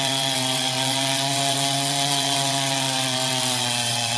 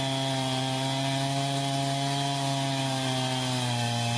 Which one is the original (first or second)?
second